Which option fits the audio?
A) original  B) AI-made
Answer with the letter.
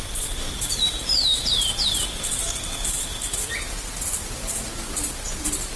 B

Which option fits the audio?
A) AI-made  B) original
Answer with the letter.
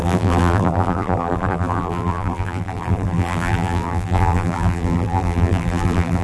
A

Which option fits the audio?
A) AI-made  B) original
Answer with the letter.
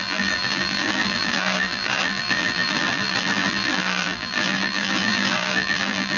A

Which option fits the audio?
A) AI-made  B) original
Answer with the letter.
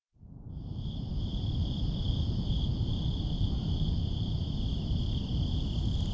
B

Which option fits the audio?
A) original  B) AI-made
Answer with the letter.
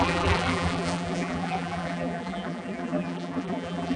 B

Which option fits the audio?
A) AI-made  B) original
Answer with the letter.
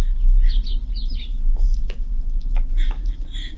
A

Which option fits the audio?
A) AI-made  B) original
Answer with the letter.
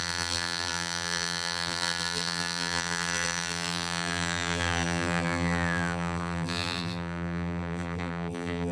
A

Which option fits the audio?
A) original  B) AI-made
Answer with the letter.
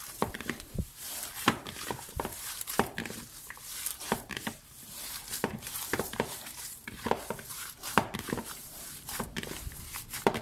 B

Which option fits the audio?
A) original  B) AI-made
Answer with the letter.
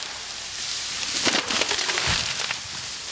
B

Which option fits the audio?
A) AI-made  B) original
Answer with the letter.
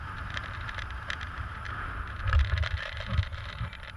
A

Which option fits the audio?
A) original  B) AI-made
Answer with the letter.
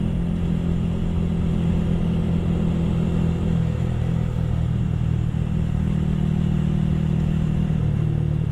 A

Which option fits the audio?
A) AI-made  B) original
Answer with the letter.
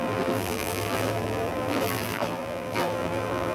A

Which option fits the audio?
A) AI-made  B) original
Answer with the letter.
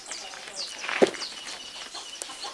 A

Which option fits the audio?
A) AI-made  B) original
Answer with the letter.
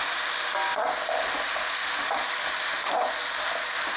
B